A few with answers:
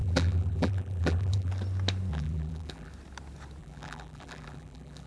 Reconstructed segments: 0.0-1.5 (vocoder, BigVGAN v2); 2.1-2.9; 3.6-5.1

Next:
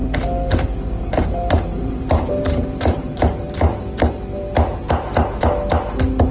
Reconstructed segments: 0.0-3.7 (vocoder, BigVGAN v2)

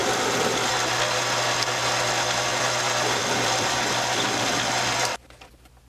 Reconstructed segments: 0.0-0.7 (vocoder, BigVGAN v2); 2.5-5.5

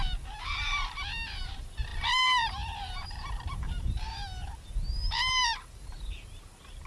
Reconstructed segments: 0.0-6.9 (vocoder, BigVGAN v2)

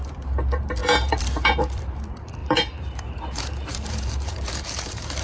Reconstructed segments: 0.0-5.2 (vocoder, BigVGAN v2)